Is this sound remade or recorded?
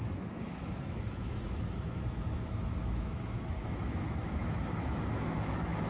remade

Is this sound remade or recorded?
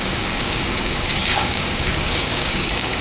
remade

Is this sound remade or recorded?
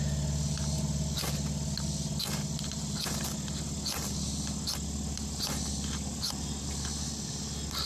recorded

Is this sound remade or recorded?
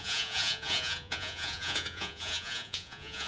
remade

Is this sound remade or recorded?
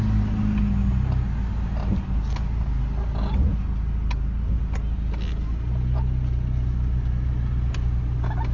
recorded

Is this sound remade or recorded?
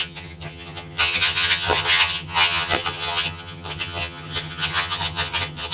remade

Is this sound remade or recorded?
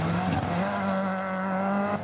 recorded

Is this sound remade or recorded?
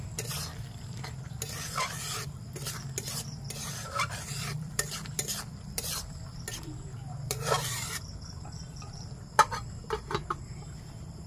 remade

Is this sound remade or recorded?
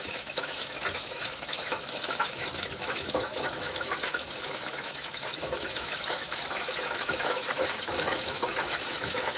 remade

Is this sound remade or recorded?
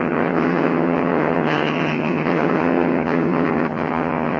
remade